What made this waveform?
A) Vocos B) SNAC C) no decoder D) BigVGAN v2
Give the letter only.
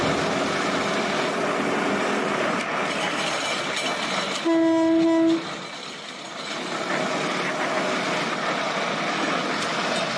C